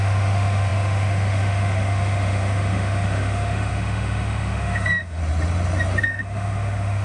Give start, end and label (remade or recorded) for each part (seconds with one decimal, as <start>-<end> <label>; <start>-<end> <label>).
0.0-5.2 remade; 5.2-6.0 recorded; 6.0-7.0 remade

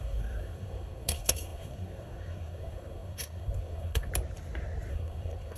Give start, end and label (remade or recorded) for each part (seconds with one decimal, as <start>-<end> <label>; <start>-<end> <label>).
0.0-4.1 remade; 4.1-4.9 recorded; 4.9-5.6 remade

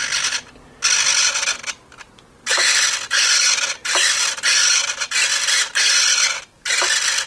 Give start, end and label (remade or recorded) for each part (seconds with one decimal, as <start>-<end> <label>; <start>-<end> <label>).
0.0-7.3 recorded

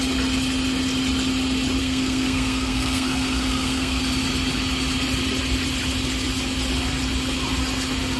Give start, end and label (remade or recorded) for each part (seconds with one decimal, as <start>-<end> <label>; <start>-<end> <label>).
0.0-1.8 recorded; 1.8-4.0 remade; 4.0-8.2 recorded